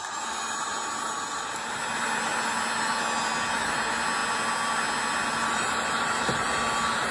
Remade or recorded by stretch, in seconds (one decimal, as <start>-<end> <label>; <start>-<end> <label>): 0.0-7.1 recorded

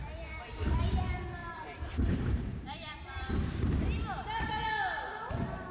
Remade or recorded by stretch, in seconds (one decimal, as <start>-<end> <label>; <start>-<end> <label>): 0.0-1.4 recorded; 1.4-3.7 remade; 3.7-5.7 recorded

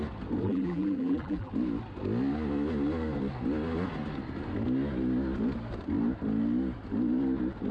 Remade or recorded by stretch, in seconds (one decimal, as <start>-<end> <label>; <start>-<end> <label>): 0.0-0.4 recorded; 0.4-1.5 remade; 1.5-7.7 recorded

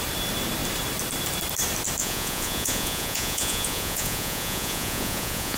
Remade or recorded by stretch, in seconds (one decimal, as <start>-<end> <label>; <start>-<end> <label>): 0.0-2.0 recorded; 2.0-5.6 remade